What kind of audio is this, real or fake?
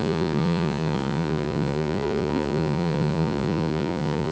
fake